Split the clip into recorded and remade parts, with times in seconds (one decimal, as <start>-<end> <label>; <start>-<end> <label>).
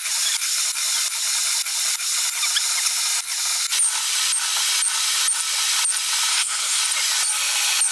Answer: 0.0-6.3 recorded; 6.3-6.8 remade; 6.8-7.9 recorded